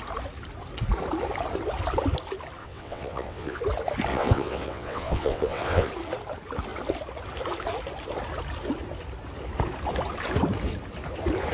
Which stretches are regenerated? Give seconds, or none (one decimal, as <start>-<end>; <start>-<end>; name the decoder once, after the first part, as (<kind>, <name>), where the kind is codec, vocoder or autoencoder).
2.6-3.6 (vocoder, WaveNeXt); 4.1-5.9